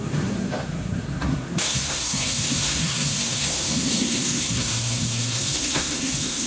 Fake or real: fake